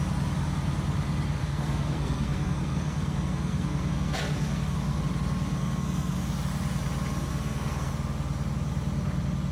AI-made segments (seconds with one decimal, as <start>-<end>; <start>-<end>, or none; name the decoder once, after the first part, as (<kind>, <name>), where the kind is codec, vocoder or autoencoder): 1.4-5.0 (codec, SNAC); 5.5-6.2; 7.3-7.9